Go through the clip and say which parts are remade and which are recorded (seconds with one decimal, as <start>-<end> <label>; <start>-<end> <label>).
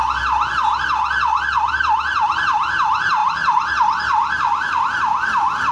0.0-3.2 recorded; 3.2-4.8 remade; 4.8-5.7 recorded